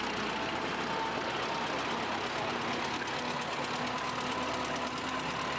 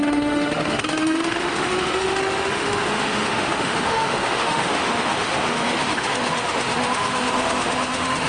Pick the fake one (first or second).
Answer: second